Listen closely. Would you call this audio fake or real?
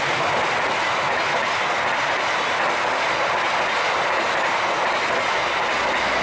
real